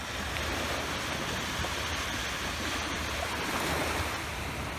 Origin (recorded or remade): recorded